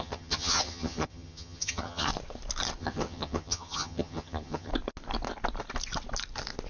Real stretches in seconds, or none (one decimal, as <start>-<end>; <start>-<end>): 2.1-2.8; 4.7-6.7

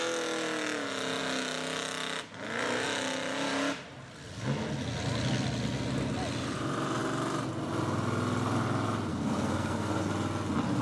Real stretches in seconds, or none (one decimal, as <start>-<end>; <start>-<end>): 0.0-9.1; 10.1-10.8

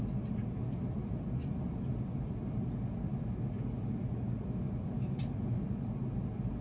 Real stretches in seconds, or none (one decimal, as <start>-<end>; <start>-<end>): 0.0-6.6

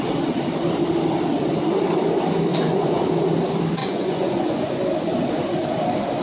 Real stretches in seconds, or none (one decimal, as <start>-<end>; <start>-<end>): 0.0-2.5; 3.0-3.8; 4.8-6.2

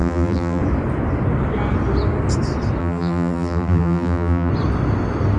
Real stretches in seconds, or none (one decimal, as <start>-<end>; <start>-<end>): 0.6-2.8; 4.5-5.4

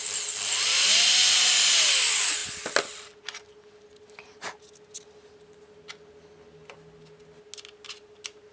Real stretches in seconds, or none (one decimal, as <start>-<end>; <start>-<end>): 0.0-8.5

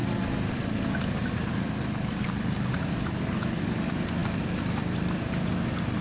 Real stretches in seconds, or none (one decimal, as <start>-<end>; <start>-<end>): 0.0-6.0